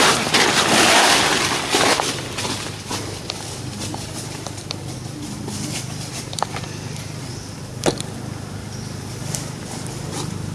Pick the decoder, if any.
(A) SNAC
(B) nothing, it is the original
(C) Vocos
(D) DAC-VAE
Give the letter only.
B